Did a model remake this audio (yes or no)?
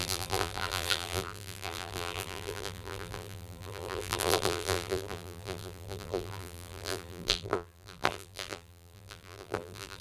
yes